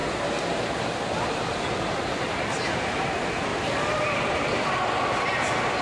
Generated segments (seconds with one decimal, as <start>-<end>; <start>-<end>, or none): 3.5-4.9